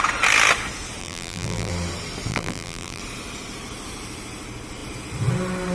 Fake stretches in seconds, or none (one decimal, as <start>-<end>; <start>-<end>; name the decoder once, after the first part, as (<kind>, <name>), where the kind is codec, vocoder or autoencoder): 1.0-1.7 (vocoder, BigVGAN v2); 2.3-3.0